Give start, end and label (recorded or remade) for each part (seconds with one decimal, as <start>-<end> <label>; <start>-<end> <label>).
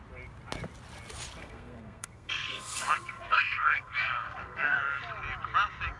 0.0-1.4 recorded; 1.4-5.0 remade; 5.0-6.0 recorded